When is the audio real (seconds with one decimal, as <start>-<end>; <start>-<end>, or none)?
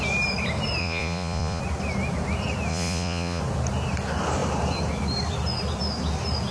0.0-0.8; 1.6-2.7; 3.4-6.5